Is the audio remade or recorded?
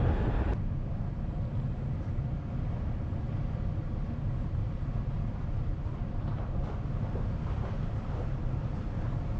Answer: recorded